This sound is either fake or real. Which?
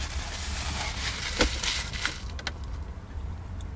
real